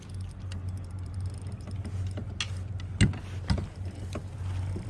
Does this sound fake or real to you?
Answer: real